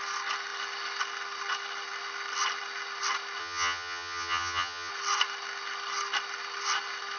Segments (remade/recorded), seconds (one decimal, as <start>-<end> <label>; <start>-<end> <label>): 0.0-3.4 recorded; 3.4-4.9 remade; 4.9-7.2 recorded